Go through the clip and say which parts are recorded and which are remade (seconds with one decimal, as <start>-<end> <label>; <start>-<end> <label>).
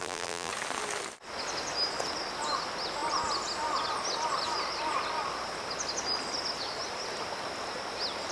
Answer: 0.0-0.5 remade; 0.5-8.3 recorded